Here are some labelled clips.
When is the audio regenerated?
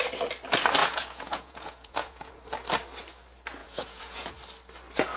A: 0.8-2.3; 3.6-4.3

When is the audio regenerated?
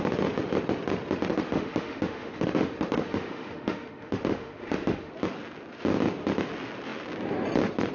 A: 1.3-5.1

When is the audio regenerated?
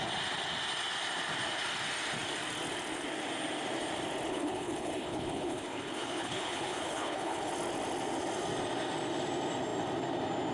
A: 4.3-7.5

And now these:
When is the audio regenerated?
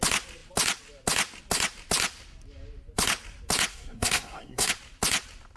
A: 3.7-4.7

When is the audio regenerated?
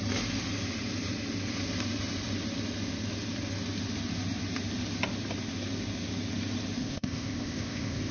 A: 6.8-8.1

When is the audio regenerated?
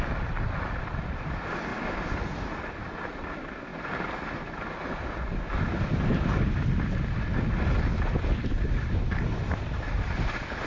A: none